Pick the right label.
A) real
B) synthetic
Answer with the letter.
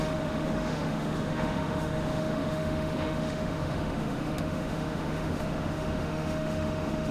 B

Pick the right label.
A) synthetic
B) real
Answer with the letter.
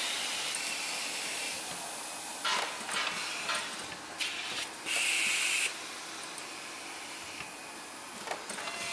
B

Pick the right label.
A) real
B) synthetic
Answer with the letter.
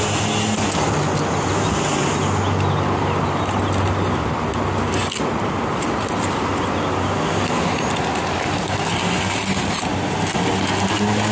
A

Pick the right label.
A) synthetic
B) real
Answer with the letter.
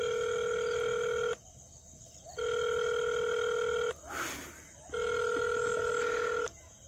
B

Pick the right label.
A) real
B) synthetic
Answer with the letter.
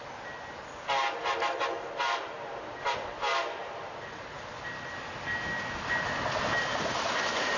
A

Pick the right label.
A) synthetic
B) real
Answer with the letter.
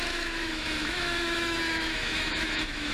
A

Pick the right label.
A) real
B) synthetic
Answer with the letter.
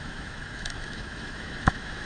B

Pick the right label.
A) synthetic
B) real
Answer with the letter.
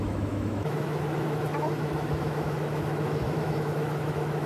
A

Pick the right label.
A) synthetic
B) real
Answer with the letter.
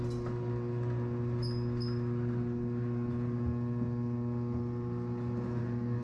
B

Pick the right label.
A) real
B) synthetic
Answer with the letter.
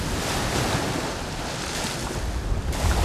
A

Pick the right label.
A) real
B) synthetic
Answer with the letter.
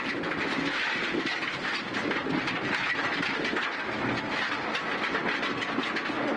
A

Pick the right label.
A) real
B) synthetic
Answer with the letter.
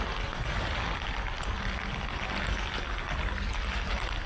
A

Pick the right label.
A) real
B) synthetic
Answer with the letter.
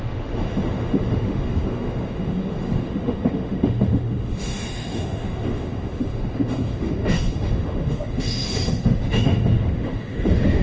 B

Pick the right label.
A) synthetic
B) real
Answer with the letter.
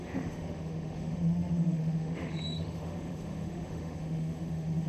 A